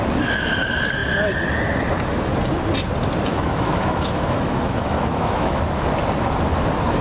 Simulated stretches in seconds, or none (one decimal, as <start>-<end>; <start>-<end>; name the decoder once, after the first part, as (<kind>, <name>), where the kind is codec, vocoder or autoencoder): 3.3-5.6 (autoencoder, DAC-VAE)